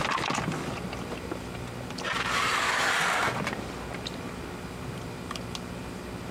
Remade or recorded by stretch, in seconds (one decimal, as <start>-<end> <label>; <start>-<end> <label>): 0.0-6.3 remade